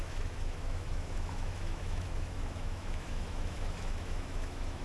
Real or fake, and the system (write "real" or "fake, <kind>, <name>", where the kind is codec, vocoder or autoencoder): fake, autoencoder, DAC-VAE